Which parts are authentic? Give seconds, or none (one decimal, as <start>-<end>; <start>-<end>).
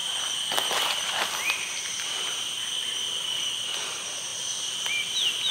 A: 1.2-5.5